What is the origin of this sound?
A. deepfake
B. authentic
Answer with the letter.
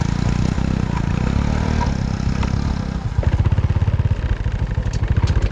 B